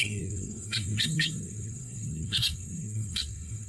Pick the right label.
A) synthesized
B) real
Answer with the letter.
A